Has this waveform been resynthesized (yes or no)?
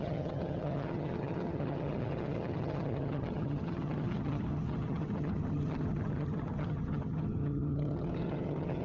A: yes